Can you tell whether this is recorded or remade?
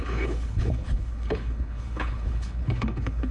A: remade